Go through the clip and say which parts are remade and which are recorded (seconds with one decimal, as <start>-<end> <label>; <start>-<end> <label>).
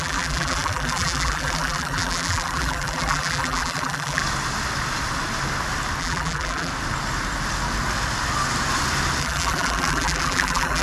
0.0-4.2 remade; 4.2-6.0 recorded; 6.0-6.7 remade; 6.7-9.2 recorded; 9.2-10.8 remade